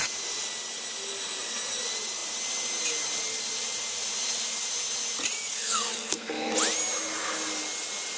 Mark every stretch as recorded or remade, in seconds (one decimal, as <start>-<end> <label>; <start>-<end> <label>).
0.0-5.5 recorded; 5.5-6.5 remade; 6.5-8.2 recorded